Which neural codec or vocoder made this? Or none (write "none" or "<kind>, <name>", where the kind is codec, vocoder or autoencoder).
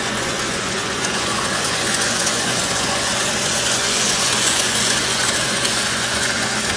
vocoder, Vocos